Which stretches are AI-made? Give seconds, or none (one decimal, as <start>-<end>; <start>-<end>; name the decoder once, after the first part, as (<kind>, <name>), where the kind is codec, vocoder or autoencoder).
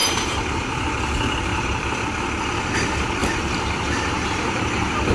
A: 0.0-0.8 (vocoder, BigVGAN v2); 1.5-2.0; 3.2-5.1